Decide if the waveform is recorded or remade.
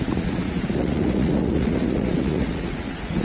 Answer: remade